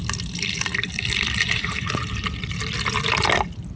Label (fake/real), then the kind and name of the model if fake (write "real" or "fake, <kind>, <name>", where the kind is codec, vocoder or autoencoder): real